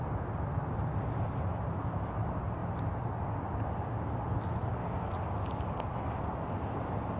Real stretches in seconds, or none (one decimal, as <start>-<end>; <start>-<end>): 0.0-7.2